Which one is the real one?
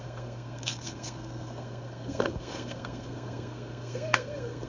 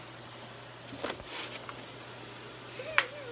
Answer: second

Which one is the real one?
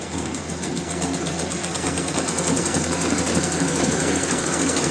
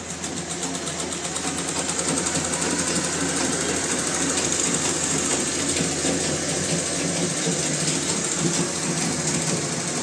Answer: second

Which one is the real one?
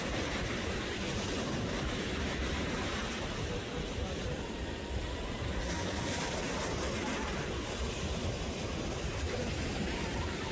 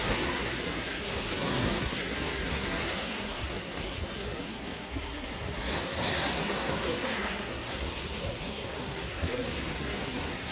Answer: first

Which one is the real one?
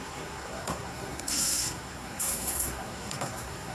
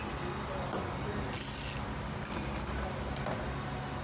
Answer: second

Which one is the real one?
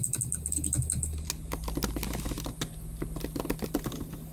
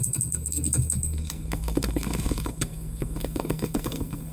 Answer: first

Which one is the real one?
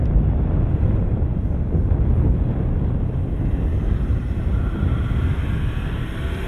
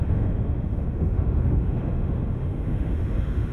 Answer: first